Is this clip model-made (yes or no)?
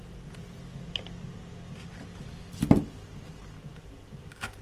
no